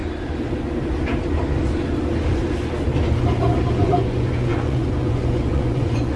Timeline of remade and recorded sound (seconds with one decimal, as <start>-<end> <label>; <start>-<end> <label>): 0.0-3.7 recorded; 3.7-6.2 remade